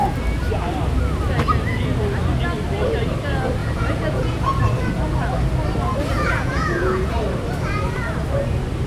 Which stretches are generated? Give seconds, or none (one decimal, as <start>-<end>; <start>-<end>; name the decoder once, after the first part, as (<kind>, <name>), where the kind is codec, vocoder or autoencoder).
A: 3.6-4.6 (vocoder, Vocos); 6.1-7.1